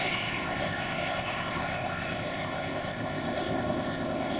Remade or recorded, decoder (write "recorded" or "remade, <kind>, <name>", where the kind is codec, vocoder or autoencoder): remade, codec, ZipCodec